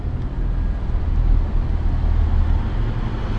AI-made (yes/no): no